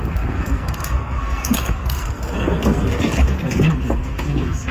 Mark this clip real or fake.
fake